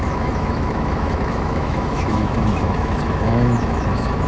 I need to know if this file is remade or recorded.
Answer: remade